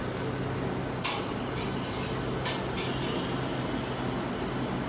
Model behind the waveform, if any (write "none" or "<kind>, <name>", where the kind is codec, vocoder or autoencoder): none